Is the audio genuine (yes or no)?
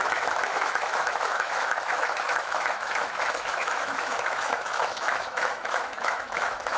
no